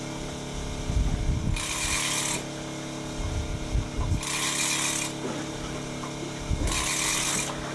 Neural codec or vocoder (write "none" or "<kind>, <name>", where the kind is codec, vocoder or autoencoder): none